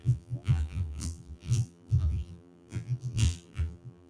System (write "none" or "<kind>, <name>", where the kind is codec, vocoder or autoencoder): vocoder, BigVGAN v2